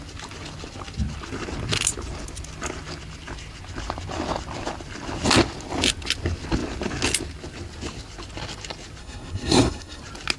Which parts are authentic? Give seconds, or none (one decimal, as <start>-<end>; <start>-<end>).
0.0-9.0; 10.0-10.4